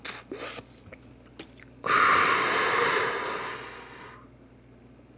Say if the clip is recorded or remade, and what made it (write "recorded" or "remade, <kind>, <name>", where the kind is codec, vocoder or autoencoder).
recorded